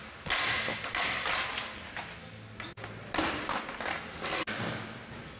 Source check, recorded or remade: recorded